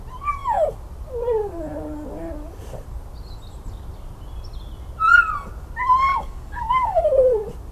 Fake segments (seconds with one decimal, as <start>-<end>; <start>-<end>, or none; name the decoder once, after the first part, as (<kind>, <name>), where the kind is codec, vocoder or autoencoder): 6.1-7.0 (codec, DAC)